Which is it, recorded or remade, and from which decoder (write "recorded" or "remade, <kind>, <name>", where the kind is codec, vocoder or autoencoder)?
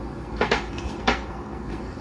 remade, codec, SNAC